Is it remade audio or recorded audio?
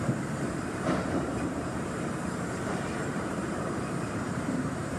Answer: remade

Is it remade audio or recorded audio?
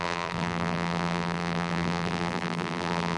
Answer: remade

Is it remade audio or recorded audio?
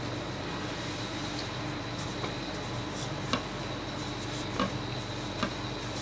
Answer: recorded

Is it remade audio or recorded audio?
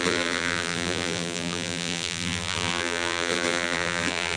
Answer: remade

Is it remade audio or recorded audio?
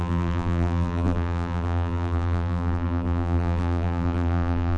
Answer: remade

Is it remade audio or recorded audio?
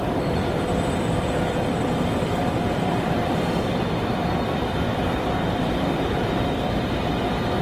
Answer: remade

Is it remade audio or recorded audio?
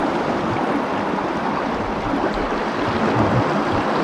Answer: recorded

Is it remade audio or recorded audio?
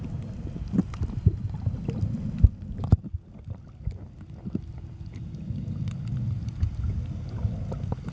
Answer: recorded